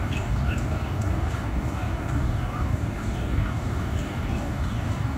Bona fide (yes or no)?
no